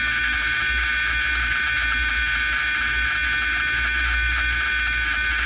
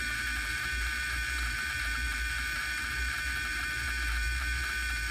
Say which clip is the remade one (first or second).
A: second